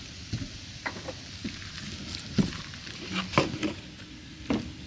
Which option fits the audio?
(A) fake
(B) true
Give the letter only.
B